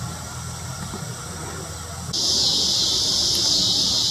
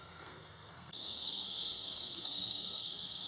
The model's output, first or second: second